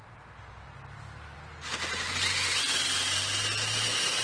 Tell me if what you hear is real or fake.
real